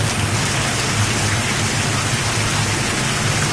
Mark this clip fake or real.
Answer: real